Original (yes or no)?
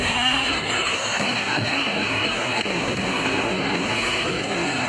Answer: no